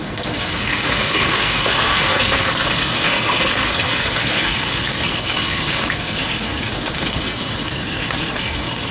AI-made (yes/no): yes